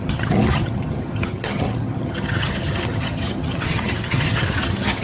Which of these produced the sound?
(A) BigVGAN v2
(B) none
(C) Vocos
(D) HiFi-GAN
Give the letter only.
D